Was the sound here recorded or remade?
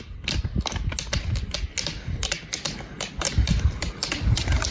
recorded